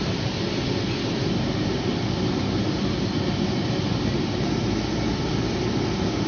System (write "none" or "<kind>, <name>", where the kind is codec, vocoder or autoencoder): none